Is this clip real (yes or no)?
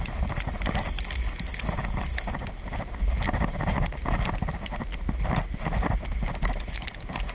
yes